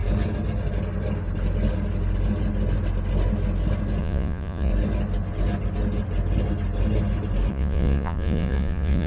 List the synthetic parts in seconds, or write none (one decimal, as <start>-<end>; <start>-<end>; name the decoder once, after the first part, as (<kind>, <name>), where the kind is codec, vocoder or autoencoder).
4.0-4.7 (vocoder, Vocos); 7.5-9.1